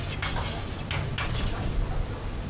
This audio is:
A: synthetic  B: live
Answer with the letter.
B